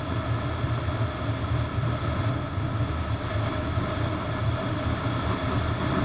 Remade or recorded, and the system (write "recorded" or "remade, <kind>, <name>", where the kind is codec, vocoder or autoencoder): recorded